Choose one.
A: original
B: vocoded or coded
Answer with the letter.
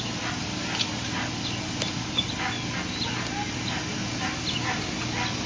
A